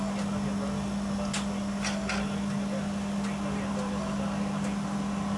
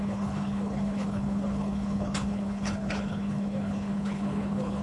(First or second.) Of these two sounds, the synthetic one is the second